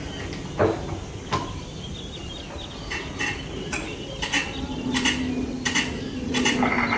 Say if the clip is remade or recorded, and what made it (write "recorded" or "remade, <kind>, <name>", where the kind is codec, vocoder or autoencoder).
recorded